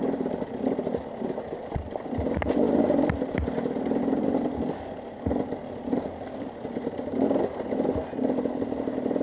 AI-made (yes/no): no